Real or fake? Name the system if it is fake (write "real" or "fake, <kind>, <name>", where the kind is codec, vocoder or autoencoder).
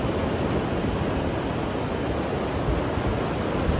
real